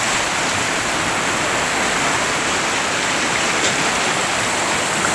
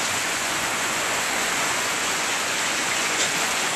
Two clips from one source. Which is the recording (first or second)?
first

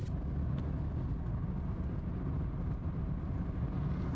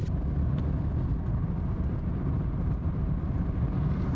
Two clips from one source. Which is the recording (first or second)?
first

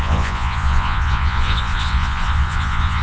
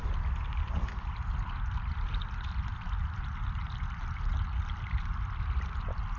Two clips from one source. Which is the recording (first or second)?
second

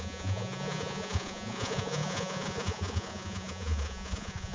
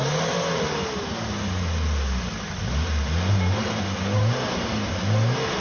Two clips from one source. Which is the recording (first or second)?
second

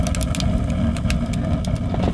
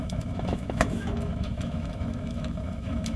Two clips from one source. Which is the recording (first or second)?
first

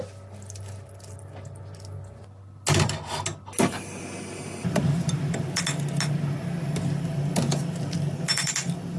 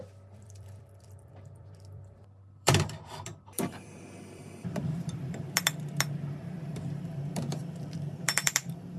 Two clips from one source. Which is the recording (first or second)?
first